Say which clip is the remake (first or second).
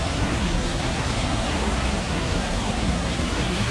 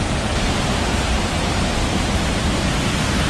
first